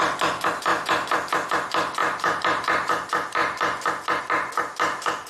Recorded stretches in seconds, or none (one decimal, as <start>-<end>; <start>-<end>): 0.0-0.7; 1.5-2.0; 2.9-5.3